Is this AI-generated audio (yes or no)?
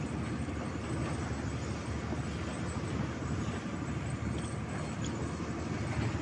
no